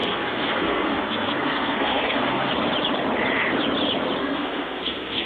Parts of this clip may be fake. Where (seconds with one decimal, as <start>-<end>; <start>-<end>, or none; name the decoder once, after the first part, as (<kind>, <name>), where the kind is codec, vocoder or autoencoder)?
0.0-2.5 (codec, SNAC); 4.2-5.3

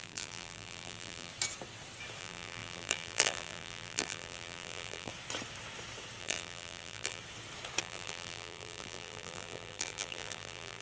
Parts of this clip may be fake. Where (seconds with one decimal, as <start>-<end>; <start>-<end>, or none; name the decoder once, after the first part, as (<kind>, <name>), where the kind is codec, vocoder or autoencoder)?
0.0-1.3 (vocoder, BigVGAN v2); 2.2-5.1; 6.2-7.2; 7.8-10.8

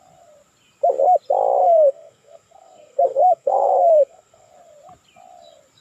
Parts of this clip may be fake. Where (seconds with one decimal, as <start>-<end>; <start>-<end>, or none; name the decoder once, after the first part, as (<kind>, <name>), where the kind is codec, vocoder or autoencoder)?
1.6-4.5 (codec, SNAC)

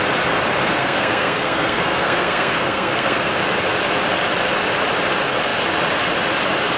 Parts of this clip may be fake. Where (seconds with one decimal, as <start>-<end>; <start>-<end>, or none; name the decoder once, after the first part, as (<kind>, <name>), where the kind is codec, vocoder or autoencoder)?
0.8-3.3 (codec, SNAC)

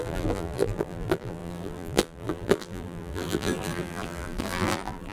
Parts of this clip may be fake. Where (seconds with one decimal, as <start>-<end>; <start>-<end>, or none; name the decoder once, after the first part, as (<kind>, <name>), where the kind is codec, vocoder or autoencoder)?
0.0-5.1 (vocoder, BigVGAN v2)